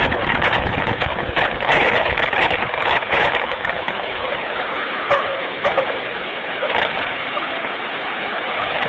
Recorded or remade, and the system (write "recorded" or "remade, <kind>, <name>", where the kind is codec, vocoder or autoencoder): remade, codec, HILCodec